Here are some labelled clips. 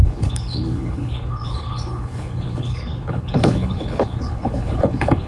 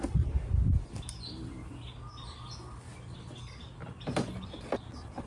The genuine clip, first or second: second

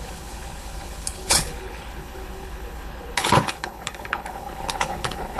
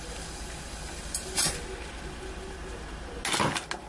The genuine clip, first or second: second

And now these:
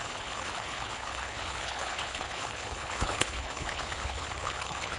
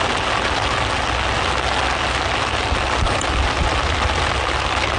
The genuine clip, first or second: second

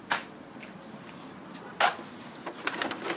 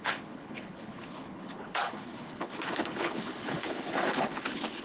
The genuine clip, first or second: first